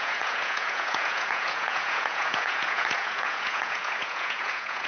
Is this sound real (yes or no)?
no